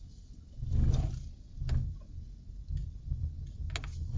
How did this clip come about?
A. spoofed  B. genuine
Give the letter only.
B